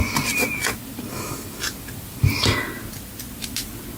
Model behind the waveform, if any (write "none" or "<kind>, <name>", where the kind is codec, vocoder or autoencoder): none